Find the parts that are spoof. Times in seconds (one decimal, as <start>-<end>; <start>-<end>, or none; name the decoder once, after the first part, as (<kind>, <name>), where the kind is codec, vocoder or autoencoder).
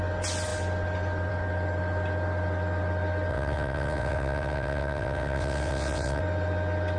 3.3-6.2 (vocoder, WaveNeXt)